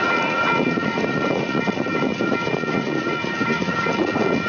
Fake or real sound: fake